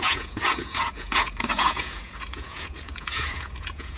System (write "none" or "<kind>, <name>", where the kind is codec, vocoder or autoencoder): vocoder, Vocos